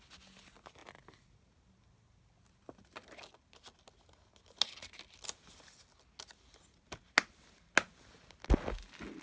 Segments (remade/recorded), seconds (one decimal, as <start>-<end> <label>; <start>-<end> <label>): 0.0-9.2 recorded